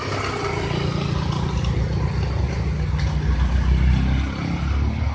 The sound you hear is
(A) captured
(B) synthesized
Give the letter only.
A